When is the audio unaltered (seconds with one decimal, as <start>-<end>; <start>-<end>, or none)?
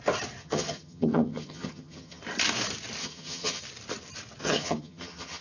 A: 0.0-0.4; 2.2-3.0; 3.6-4.4